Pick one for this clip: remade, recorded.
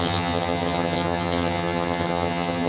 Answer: remade